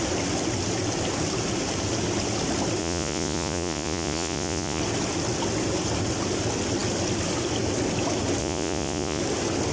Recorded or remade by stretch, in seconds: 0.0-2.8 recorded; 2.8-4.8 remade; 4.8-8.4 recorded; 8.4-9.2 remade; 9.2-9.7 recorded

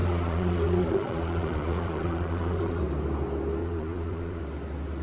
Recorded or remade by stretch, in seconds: 0.0-2.8 remade; 2.8-3.6 recorded; 3.6-4.4 remade; 4.4-5.0 recorded

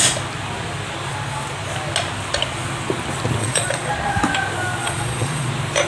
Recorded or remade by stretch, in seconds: 0.0-3.4 recorded; 3.4-3.9 remade; 3.9-4.8 recorded; 4.8-5.5 remade; 5.5-5.9 recorded

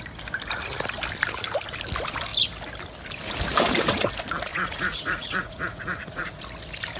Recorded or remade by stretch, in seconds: 0.0-4.5 recorded; 4.5-6.4 remade; 6.4-7.0 recorded

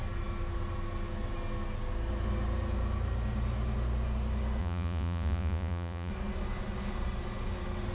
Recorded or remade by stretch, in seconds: 0.0-4.6 recorded; 4.6-6.1 remade; 6.1-7.9 recorded